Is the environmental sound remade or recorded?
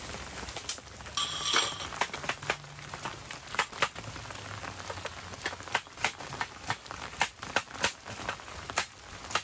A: recorded